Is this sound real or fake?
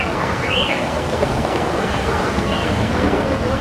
fake